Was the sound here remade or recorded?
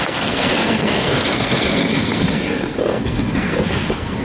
remade